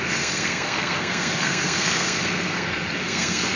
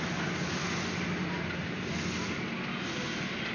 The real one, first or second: second